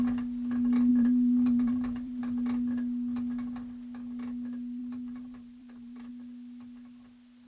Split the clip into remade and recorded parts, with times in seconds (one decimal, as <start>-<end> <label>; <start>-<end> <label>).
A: 0.0-0.9 recorded; 0.9-2.2 remade; 2.2-4.8 recorded; 4.8-6.1 remade; 6.1-7.5 recorded